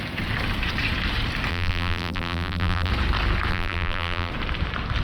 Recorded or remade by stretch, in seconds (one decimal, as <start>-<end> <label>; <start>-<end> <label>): 0.0-1.5 recorded; 1.5-2.9 remade; 2.9-3.5 recorded; 3.5-4.3 remade; 4.3-5.0 recorded